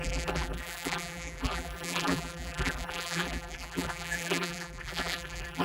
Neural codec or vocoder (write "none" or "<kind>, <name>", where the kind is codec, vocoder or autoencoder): vocoder, BigVGAN v2